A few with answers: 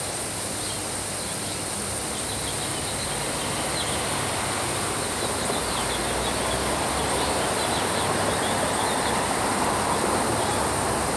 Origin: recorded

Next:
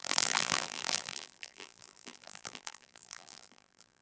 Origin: remade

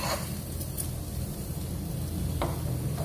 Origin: recorded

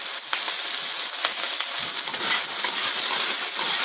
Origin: recorded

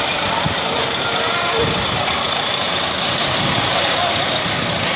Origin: remade